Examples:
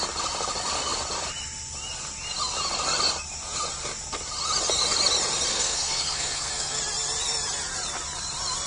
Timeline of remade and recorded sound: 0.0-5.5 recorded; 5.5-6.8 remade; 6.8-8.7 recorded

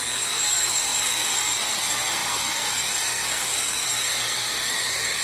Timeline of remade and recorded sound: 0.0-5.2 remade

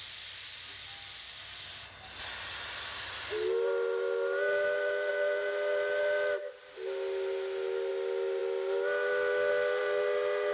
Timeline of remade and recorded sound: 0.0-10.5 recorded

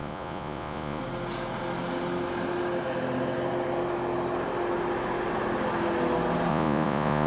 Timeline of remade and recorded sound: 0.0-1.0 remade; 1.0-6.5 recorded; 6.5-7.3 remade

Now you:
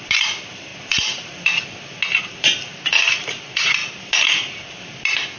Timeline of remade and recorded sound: 0.0-5.4 recorded